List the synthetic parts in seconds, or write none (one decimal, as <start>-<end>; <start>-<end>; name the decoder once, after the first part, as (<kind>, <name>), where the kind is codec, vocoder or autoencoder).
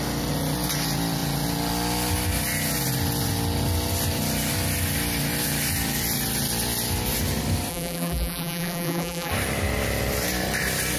7.7-9.3 (vocoder, BigVGAN v2)